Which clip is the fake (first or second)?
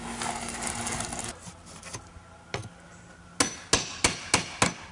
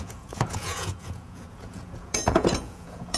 second